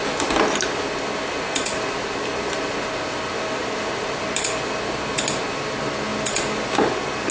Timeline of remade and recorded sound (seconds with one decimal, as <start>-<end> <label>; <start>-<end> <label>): 0.0-7.3 recorded